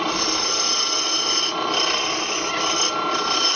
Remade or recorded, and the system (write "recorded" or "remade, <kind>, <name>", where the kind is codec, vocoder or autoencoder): recorded